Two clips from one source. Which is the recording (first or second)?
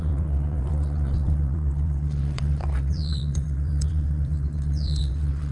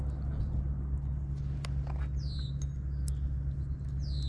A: second